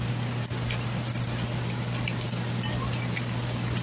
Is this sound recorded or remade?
recorded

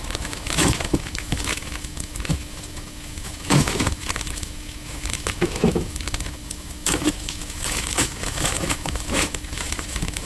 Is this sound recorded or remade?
remade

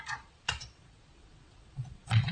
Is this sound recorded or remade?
remade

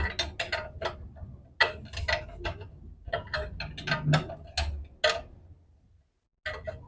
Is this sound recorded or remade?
recorded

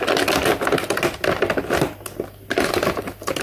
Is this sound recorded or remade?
recorded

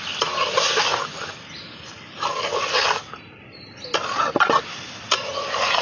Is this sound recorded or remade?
recorded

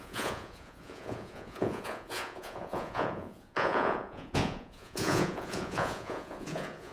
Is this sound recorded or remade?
remade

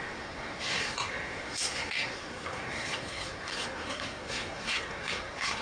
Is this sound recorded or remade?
remade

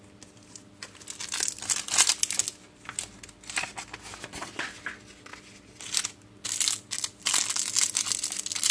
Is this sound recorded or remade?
recorded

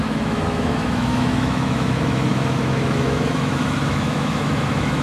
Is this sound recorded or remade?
remade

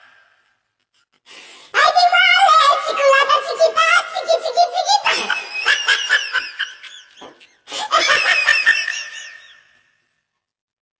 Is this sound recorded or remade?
recorded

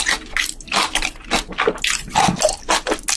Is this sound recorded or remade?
recorded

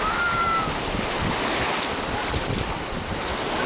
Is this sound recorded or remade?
recorded